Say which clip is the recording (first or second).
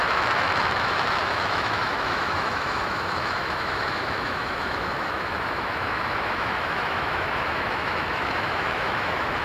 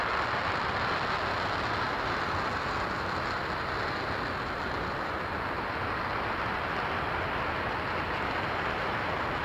second